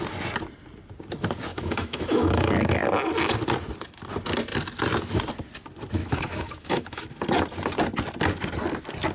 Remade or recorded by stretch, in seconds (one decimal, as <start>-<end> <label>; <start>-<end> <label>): 0.0-1.5 recorded; 1.5-2.5 remade; 2.5-6.0 recorded; 6.0-7.0 remade; 7.0-9.1 recorded